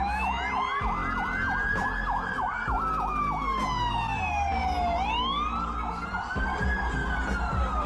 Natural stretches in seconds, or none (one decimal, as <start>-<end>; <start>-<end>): 0.0-1.0; 2.8-7.9